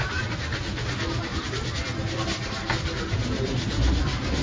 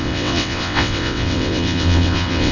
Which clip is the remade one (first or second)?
second